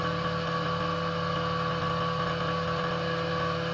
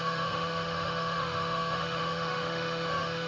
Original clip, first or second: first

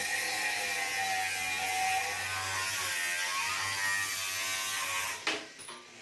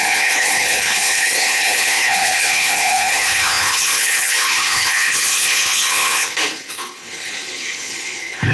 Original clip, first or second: first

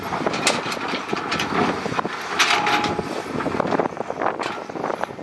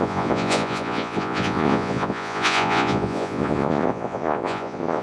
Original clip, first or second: first